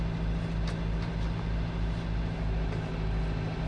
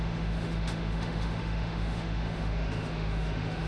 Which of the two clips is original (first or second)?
first